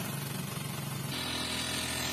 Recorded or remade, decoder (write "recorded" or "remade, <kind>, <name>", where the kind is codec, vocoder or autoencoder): recorded